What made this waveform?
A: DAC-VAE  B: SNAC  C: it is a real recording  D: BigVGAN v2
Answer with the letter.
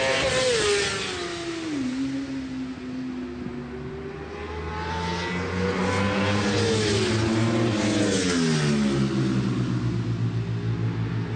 C